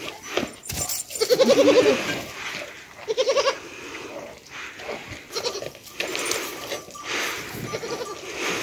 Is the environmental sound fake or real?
real